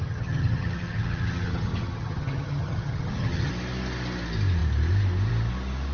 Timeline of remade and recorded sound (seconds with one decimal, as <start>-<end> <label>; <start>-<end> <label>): 0.0-3.5 remade; 3.5-5.9 recorded